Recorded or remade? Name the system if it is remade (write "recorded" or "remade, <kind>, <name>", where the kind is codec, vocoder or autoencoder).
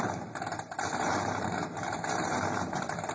remade, vocoder, BigVGAN v2